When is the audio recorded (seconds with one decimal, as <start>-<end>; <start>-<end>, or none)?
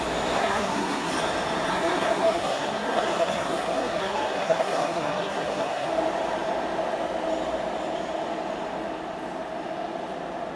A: 0.0-0.4; 1.1-1.7; 5.9-10.6